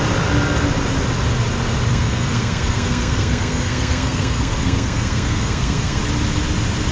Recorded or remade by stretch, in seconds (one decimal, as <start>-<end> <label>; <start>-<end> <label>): 0.0-1.9 recorded; 1.9-6.0 remade; 6.0-6.9 recorded